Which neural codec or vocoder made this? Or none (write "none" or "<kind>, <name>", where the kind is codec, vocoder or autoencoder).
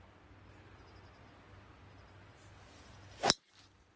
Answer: none